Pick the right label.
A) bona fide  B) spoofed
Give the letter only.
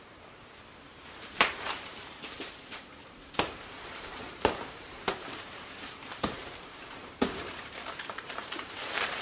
B